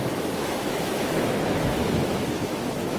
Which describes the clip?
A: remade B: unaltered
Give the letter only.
A